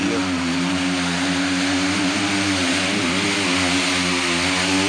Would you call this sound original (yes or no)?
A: yes